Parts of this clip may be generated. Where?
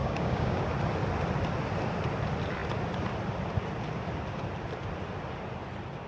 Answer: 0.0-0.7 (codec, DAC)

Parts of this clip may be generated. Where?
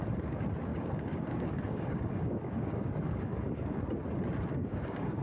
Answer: 0.7-3.8 (codec, DAC); 4.5-5.2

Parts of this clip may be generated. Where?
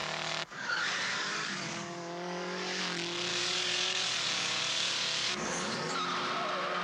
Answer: 0.0-2.8 (codec, DAC); 3.3-5.9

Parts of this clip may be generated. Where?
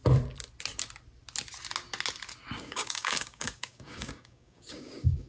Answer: 2.6-5.3 (codec, DAC)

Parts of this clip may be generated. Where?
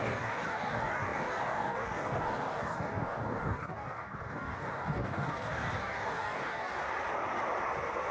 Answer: 0.0-6.7 (codec, DAC)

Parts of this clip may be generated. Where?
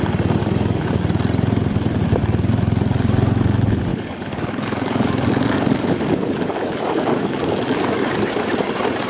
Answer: 0.4-1.0 (codec, DAC); 3.9-8.4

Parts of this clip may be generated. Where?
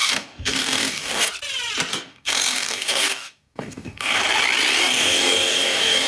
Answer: 0.0-1.3 (codec, DAC); 1.9-4.2; 4.8-6.1